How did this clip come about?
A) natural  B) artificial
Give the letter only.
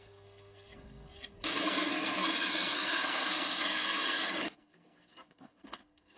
B